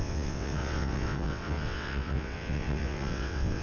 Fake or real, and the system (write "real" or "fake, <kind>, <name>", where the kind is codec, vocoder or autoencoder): fake, vocoder, WaveNeXt